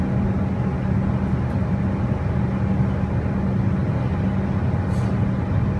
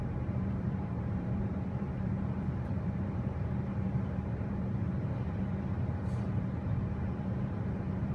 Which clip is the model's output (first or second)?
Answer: second